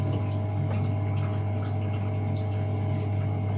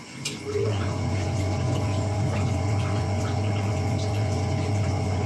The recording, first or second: first